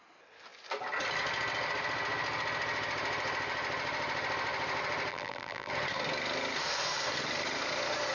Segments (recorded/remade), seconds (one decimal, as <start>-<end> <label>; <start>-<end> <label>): 0.0-5.1 recorded; 5.1-5.7 remade; 5.7-8.1 recorded